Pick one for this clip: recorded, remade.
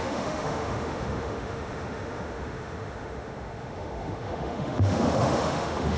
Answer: remade